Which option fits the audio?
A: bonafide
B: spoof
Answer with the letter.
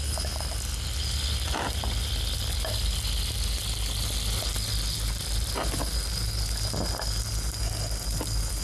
A